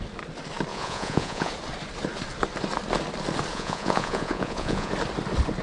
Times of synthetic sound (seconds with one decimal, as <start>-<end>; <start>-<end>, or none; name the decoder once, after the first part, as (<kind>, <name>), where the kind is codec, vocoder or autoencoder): 0.7-1.5 (vocoder, Vocos); 3.5-4.9